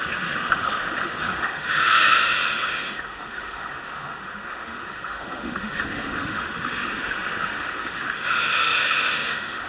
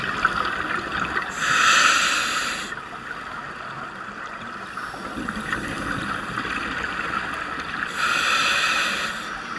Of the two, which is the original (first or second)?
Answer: second